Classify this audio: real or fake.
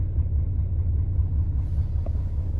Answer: real